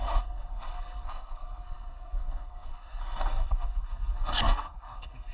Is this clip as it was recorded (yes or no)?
no